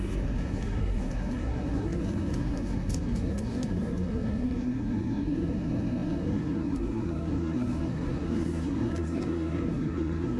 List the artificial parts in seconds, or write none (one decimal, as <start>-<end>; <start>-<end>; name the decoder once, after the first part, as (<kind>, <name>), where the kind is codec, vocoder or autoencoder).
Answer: 0.0-10.4 (codec, SNAC)